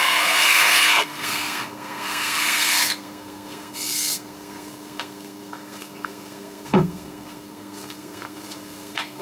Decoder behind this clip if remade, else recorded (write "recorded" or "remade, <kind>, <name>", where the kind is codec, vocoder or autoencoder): remade, codec, SNAC